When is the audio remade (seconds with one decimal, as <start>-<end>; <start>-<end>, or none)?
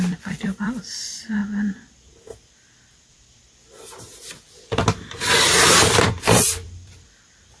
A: 0.0-1.4; 3.1-7.6